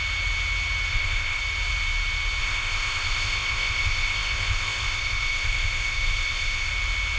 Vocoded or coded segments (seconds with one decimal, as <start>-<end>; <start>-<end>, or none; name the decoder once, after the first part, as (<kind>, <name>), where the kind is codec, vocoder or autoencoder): 0.9-1.4 (codec, ZipCodec); 2.4-6.7